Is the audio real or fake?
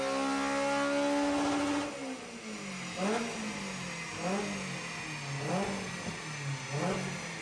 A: real